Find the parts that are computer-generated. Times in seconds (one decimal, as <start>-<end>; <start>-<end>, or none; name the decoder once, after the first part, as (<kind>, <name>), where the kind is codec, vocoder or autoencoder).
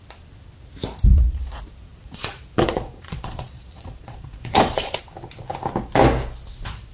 1.1-5.0 (vocoder, Vocos)